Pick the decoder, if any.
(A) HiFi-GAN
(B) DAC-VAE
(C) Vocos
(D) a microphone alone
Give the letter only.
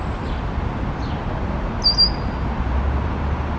D